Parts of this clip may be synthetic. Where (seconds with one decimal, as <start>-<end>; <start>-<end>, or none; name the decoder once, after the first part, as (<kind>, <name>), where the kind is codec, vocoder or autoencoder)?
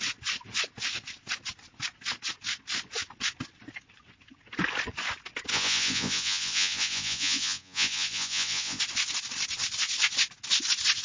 5.5-8.8 (vocoder, Vocos)